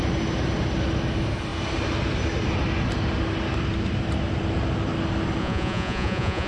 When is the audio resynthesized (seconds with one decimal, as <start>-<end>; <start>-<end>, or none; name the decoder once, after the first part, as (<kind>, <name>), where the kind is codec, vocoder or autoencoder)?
5.4-6.5 (vocoder, Vocos)